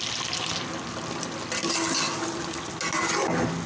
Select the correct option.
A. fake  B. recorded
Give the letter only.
B